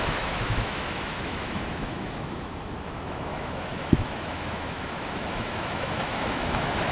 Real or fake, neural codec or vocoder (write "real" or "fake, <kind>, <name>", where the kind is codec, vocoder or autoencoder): fake, autoencoder, DAC-VAE